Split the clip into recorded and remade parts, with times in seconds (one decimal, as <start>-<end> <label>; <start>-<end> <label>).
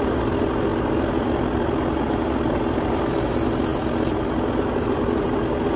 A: 0.0-5.8 recorded